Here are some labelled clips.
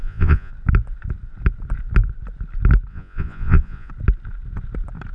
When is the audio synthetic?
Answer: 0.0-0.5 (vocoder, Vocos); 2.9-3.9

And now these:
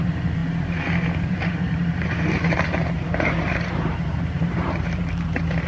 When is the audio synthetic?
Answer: 0.0-5.7 (vocoder, BigVGAN v2)

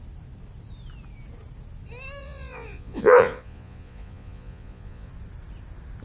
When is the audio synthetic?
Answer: 2.2-5.1 (vocoder, Vocos)

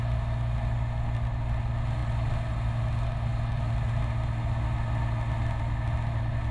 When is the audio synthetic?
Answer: none

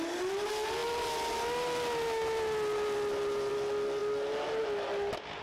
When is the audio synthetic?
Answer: 0.8-3.5 (vocoder, BigVGAN v2)